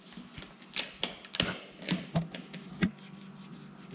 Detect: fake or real real